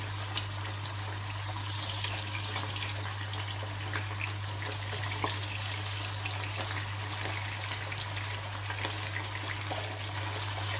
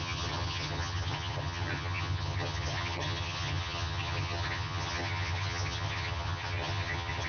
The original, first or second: first